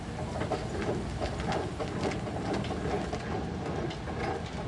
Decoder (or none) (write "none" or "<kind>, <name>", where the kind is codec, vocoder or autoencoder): none